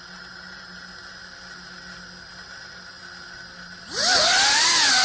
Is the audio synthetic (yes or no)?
no